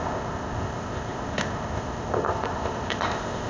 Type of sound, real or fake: fake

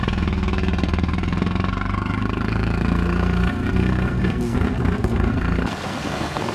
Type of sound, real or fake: fake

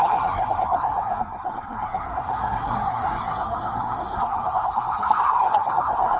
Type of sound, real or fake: fake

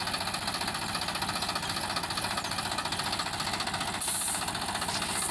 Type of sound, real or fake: real